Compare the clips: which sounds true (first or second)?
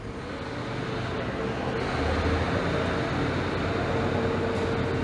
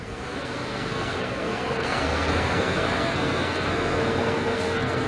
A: first